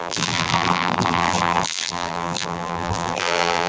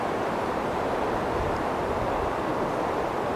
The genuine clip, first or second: second